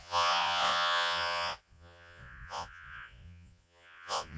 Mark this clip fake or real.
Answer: fake